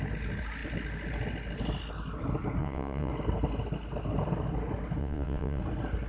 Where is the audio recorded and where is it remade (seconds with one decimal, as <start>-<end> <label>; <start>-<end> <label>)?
0.0-2.6 recorded; 2.6-3.1 remade; 3.1-5.0 recorded; 5.0-5.6 remade; 5.6-6.1 recorded